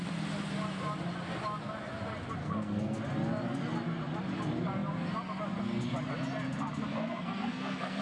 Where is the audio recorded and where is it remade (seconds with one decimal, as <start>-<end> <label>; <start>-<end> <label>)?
0.0-2.4 recorded; 2.4-3.0 remade; 3.0-6.9 recorded; 6.9-8.0 remade